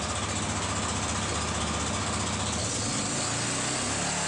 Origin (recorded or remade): recorded